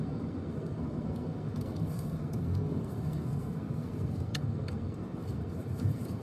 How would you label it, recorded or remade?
remade